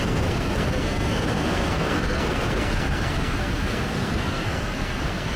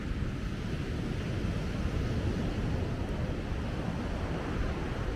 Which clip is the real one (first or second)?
second